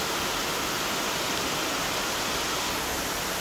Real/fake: real